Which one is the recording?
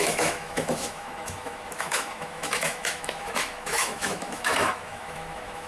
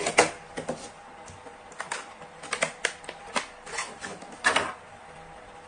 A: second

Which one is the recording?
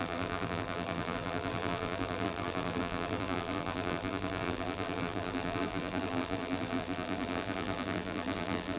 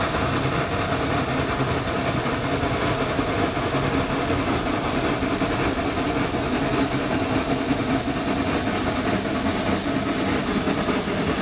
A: second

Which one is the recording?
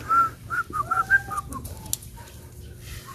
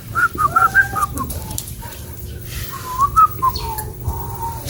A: first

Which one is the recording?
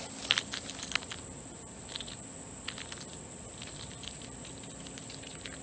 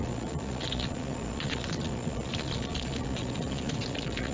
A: first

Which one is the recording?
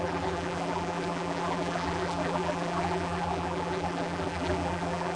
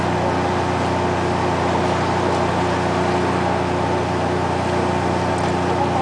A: second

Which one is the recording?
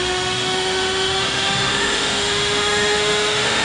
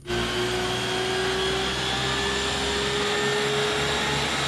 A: second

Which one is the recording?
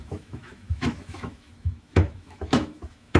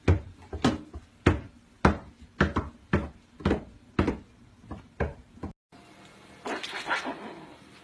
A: second